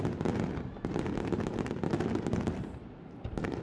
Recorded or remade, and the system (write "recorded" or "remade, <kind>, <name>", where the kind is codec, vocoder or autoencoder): recorded